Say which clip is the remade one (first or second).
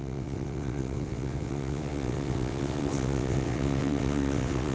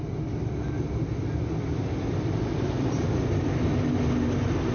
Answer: first